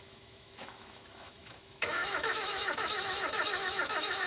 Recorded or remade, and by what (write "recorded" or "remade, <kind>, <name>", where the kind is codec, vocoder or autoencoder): remade, autoencoder, DAC-VAE